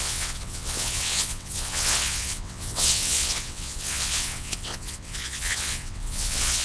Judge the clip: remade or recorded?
remade